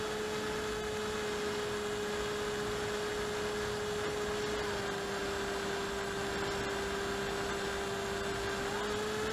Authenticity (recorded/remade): recorded